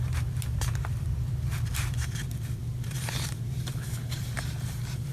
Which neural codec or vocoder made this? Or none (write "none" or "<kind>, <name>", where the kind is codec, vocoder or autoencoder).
vocoder, BigVGAN v2